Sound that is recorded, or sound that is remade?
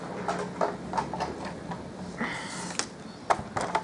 recorded